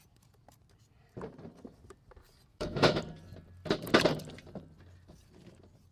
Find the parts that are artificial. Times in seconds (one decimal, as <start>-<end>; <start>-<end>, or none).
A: 2.5-3.0